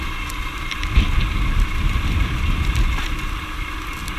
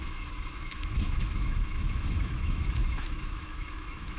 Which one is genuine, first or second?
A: first